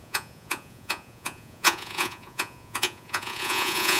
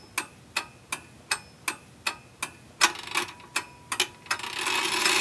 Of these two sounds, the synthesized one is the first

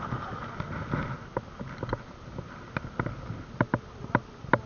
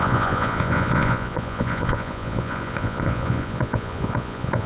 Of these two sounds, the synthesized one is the second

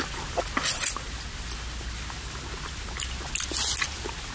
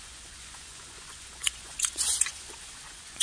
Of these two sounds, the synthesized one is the second